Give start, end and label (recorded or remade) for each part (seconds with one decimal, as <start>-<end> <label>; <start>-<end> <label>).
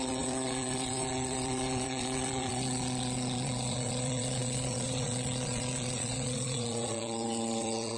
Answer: 0.0-8.0 remade